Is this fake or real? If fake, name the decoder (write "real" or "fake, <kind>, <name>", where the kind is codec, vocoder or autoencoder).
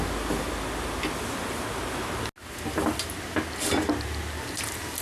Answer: real